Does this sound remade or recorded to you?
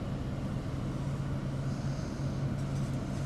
recorded